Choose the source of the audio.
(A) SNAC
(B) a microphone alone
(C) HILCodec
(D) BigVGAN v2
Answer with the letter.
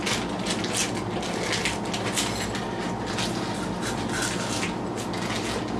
B